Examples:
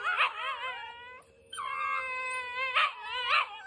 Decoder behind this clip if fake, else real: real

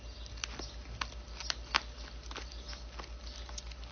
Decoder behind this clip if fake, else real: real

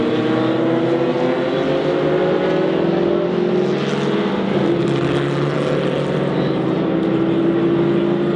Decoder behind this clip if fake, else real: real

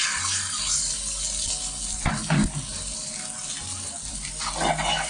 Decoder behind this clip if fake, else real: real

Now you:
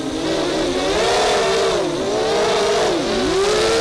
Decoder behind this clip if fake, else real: real